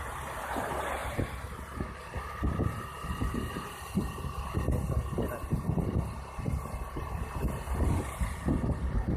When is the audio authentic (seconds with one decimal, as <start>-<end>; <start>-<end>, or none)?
0.0-1.0; 1.6-9.2